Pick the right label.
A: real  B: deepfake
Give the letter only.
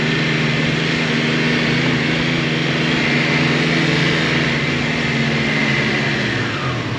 A